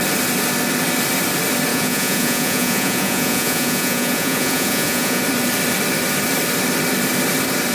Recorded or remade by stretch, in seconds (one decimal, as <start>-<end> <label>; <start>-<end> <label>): 0.0-1.7 recorded; 1.7-5.2 remade; 5.2-7.7 recorded